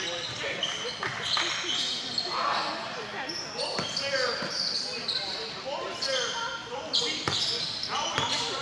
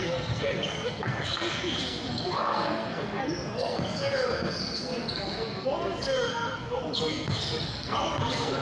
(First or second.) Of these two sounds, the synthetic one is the second